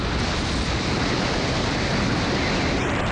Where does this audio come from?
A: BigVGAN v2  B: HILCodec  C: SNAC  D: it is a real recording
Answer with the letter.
D